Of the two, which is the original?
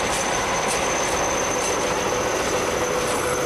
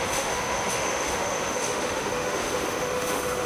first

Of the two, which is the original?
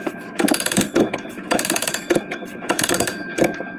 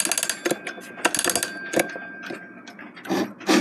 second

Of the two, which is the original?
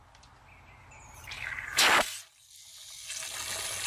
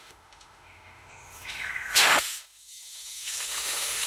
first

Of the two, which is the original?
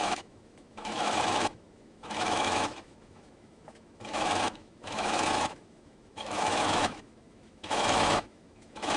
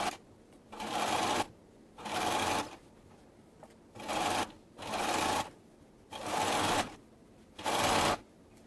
second